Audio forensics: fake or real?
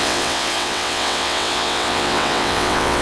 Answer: fake